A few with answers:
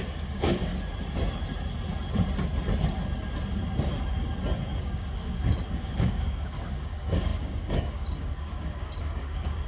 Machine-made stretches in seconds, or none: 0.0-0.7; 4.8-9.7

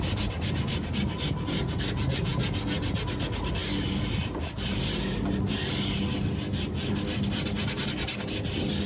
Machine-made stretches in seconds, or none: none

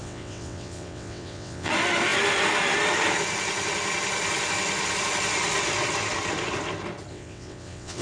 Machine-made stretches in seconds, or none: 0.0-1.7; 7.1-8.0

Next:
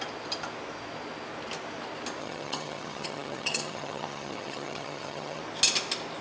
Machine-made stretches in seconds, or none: 2.2-5.4

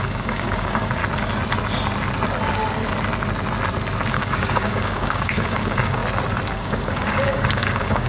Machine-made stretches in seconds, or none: 0.0-1.0; 4.1-6.0; 6.5-8.1